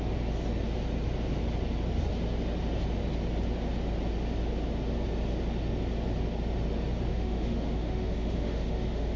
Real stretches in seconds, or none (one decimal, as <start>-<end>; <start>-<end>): 0.0-7.1